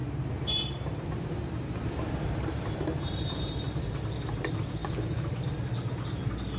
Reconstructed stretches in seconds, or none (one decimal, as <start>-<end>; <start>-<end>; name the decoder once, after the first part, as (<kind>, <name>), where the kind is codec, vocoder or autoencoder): 0.0-4.0 (vocoder, BigVGAN v2); 4.8-5.6